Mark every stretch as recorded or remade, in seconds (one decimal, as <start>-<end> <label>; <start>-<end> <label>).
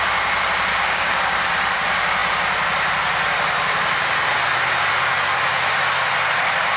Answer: 0.0-0.7 recorded; 0.7-1.5 remade; 1.5-6.8 recorded